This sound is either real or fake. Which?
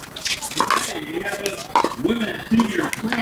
real